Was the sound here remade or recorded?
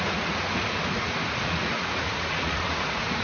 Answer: remade